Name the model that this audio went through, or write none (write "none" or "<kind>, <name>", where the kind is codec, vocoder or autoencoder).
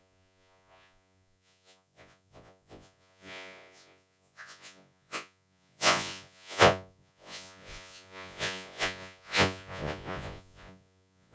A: vocoder, Vocos